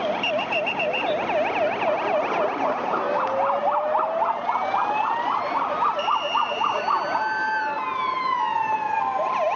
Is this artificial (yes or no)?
no